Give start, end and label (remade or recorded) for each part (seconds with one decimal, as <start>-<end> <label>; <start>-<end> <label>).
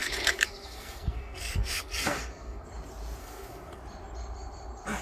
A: 0.0-2.7 remade; 2.7-3.2 recorded; 3.2-3.8 remade; 3.8-5.0 recorded